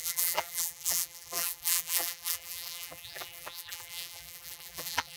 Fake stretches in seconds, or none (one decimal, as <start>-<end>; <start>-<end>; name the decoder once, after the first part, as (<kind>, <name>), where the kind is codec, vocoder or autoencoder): 0.0-5.2 (vocoder, BigVGAN v2)